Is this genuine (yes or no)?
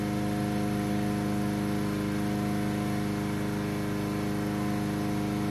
yes